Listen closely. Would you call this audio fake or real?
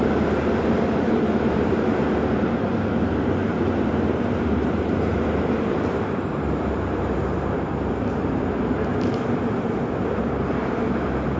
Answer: fake